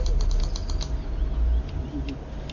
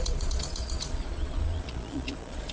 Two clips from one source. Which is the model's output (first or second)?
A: second